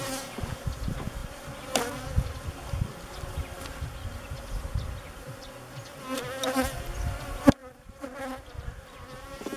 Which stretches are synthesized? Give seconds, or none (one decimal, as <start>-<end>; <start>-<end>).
7.6-8.2